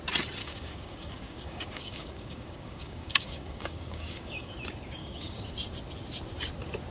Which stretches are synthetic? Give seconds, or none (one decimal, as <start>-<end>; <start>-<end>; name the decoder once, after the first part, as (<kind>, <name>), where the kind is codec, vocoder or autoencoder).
0.4-4.5 (codec, DAC); 5.0-5.5